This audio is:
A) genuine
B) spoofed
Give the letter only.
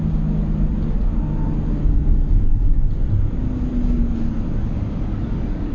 A